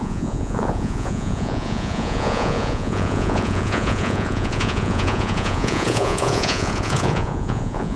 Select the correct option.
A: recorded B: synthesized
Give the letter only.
B